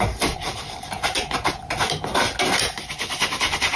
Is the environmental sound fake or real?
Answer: real